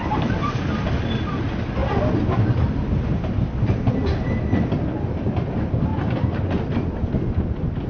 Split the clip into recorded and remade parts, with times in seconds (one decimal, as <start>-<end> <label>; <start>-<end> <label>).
0.0-1.8 recorded; 1.8-3.9 remade; 3.9-7.9 recorded